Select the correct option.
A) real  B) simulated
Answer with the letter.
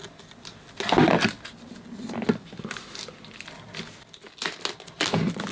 A